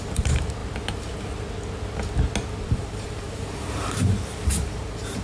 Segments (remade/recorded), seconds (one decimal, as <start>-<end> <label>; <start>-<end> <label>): 0.0-0.6 remade; 0.6-2.6 recorded; 2.6-5.2 remade